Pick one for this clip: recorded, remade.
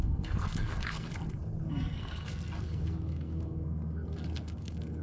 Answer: remade